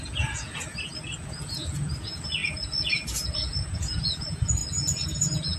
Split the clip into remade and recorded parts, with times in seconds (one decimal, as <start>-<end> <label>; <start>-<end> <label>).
0.0-5.6 remade